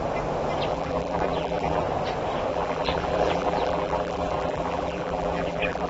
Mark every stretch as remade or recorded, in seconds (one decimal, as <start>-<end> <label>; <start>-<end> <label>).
0.0-0.7 recorded; 0.7-1.8 remade; 1.8-2.5 recorded; 2.5-5.9 remade